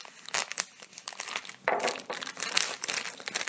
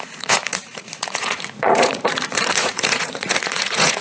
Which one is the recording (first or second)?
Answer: first